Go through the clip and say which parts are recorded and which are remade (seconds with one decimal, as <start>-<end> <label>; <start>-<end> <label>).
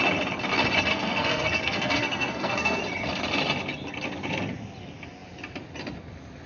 0.0-0.9 recorded; 0.9-2.8 remade; 2.8-6.5 recorded